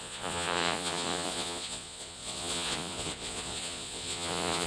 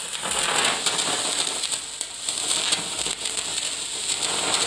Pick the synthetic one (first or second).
first